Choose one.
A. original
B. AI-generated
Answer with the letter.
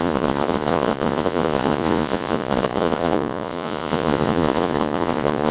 B